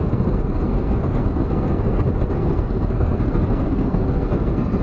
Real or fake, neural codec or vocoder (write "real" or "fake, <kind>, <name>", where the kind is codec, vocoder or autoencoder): fake, codec, SNAC